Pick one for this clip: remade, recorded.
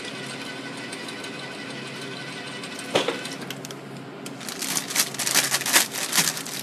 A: recorded